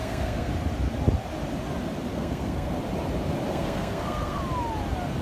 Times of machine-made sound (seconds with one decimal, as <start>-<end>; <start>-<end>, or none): 0.0-0.5; 2.1-2.8; 3.5-4.4